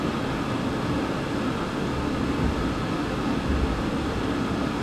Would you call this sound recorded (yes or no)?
yes